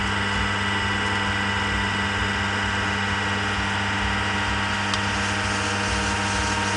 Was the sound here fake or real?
real